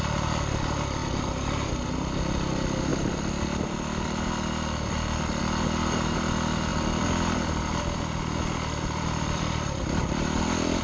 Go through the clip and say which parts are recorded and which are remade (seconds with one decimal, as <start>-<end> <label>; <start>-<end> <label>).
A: 0.0-6.7 recorded; 6.7-10.8 remade